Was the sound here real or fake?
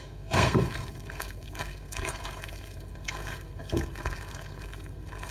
fake